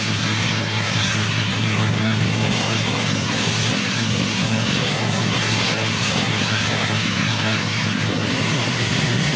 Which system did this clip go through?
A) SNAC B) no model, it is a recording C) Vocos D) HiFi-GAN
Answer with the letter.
A